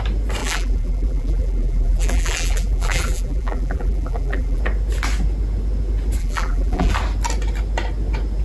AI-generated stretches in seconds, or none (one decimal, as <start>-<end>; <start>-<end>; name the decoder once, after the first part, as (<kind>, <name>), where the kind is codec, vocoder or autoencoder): 0.4-4.6 (vocoder, BigVGAN v2); 6.2-6.9